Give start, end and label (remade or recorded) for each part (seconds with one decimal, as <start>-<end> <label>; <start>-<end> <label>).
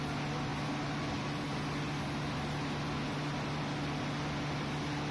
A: 0.0-5.1 recorded